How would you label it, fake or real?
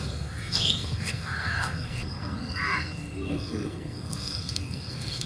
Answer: fake